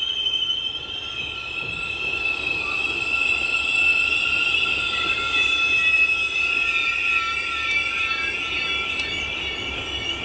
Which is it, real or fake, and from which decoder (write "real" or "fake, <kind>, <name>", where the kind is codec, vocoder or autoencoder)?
real